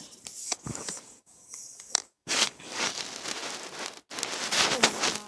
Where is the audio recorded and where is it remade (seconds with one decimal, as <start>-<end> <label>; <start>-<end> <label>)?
0.0-0.4 recorded; 0.4-3.0 remade; 3.0-5.3 recorded